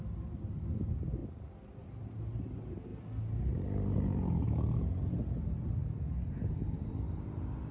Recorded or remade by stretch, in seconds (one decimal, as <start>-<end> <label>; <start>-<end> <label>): 0.0-7.7 recorded

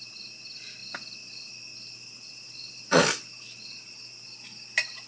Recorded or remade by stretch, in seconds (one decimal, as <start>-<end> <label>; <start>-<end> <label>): 0.0-5.1 recorded

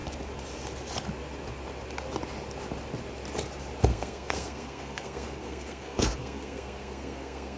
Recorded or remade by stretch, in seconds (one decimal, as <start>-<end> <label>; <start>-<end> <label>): 0.0-3.9 recorded; 3.9-7.6 remade